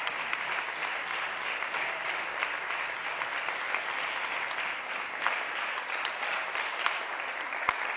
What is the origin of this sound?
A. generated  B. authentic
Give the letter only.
B